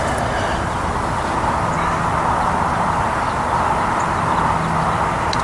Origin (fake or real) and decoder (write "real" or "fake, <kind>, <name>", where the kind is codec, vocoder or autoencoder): real